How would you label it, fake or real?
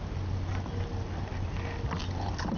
real